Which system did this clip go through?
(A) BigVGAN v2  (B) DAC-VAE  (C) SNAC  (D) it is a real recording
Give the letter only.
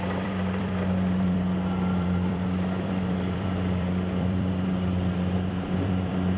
A